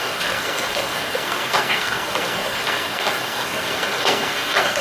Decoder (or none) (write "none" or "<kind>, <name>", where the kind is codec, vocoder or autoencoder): codec, SNAC